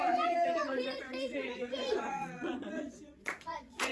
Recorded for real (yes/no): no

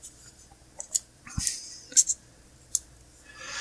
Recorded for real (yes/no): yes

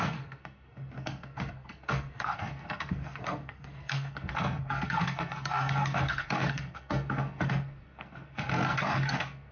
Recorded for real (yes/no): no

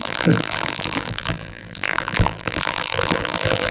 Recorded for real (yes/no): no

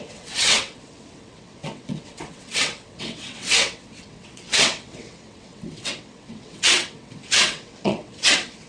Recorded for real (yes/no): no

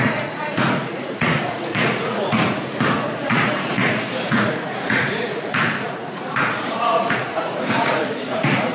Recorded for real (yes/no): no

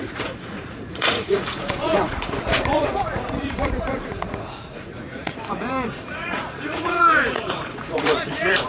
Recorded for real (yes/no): no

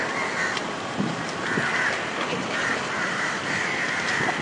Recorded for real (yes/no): yes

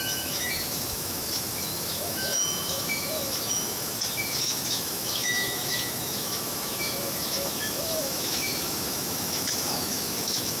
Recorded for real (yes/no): no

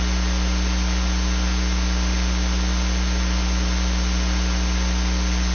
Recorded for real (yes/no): yes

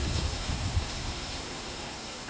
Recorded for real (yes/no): no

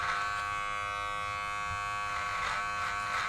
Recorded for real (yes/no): yes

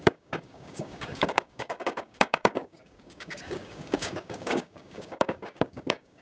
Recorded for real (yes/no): no